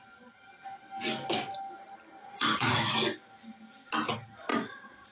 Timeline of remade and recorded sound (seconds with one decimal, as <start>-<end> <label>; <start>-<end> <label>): 0.0-2.2 recorded; 2.2-2.8 remade; 2.8-4.5 recorded; 4.5-5.1 remade